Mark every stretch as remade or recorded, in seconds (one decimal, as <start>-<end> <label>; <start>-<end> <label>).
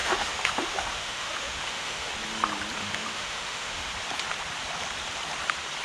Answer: 0.0-2.1 remade; 2.1-2.8 recorded; 2.8-3.9 remade; 3.9-5.8 recorded